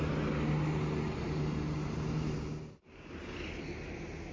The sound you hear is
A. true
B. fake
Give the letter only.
A